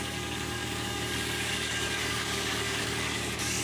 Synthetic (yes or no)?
yes